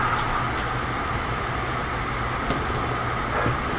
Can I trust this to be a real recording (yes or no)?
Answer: yes